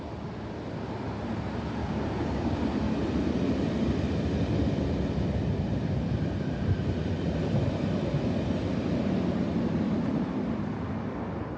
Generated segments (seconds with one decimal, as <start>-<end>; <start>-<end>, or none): 1.8-2.6